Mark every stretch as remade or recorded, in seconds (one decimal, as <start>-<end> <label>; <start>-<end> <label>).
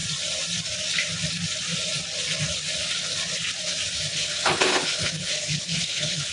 0.0-4.1 recorded; 4.1-6.3 remade